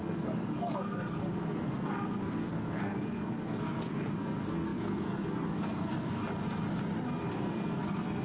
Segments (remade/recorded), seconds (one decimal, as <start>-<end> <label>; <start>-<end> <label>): 0.0-6.2 remade; 6.2-7.3 recorded; 7.3-8.2 remade